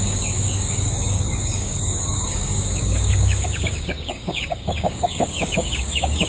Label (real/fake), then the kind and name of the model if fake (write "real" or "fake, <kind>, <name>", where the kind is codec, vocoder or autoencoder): fake, codec, DAC